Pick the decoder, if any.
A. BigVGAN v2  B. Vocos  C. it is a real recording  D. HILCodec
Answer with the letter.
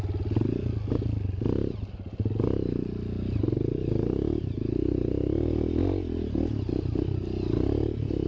C